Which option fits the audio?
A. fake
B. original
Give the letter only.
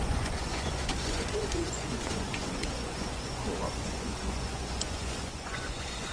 A